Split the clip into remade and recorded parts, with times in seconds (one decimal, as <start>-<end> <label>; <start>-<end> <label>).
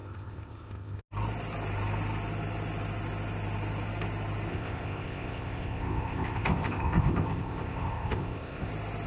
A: 0.0-1.0 remade; 1.0-4.5 recorded; 4.5-8.7 remade; 8.7-9.1 recorded